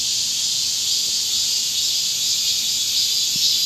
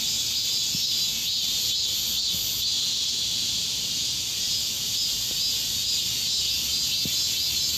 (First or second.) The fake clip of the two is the first